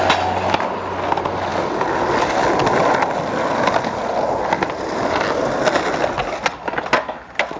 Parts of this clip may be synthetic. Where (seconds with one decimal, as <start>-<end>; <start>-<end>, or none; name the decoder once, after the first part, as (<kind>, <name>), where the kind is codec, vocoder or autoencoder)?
none